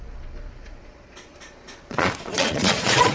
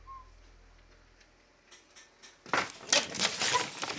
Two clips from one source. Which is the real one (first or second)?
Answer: second